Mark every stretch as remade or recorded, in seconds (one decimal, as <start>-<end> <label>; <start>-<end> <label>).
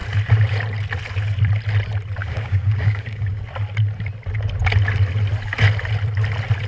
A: 0.0-2.2 recorded; 2.2-3.4 remade; 3.4-6.7 recorded